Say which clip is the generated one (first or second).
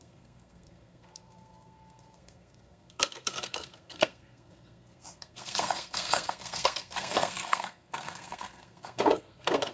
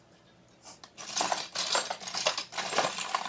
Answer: first